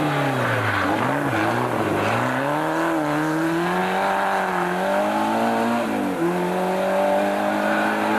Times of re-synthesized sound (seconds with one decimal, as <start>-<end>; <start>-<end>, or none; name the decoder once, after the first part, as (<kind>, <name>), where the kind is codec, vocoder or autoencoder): none